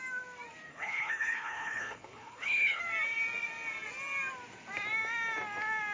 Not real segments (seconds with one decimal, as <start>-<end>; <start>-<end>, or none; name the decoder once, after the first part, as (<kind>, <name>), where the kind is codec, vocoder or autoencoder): 0.7-2.8 (codec, HILCodec)